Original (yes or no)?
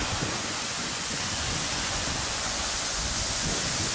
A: no